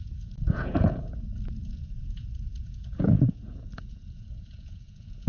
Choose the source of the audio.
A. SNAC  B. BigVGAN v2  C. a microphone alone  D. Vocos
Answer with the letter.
D